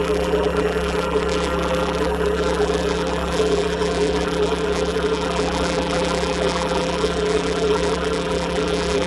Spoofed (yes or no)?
yes